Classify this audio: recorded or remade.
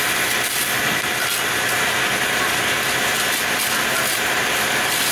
recorded